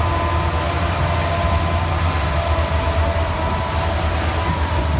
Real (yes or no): yes